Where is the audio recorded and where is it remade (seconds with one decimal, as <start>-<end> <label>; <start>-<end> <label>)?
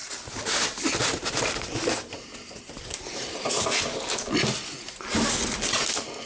0.0-6.3 recorded